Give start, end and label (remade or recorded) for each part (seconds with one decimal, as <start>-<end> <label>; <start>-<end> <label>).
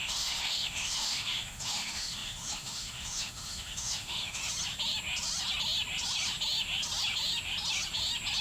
0.0-4.4 remade; 4.4-8.4 recorded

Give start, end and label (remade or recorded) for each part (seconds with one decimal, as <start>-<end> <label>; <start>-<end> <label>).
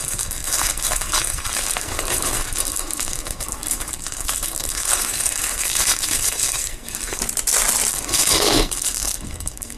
0.0-7.2 remade; 7.2-7.9 recorded; 7.9-9.8 remade